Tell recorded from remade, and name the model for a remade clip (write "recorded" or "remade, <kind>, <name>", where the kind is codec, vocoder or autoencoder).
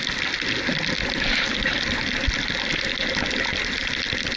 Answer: recorded